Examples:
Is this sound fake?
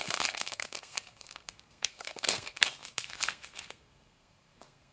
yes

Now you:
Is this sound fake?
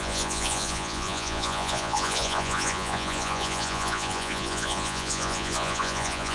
yes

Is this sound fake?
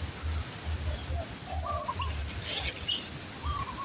no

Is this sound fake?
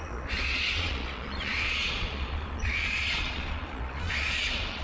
yes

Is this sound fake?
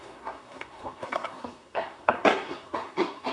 yes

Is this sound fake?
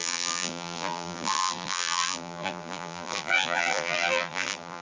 yes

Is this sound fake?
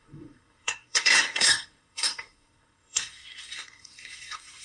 yes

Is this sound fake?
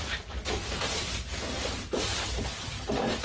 no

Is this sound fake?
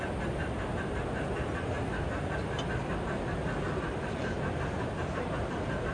no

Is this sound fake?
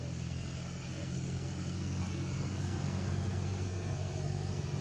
yes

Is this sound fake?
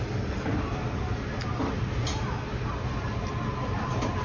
no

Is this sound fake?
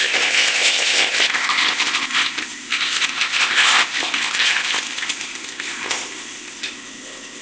yes